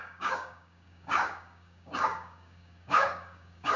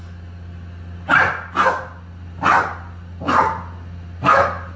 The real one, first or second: second